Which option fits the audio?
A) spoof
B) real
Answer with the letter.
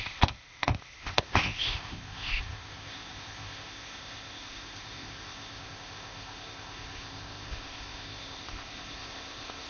A